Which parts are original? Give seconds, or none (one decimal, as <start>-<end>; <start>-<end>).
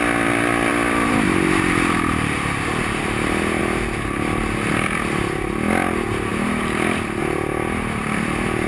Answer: 0.0-0.7; 3.6-6.3; 7.2-8.7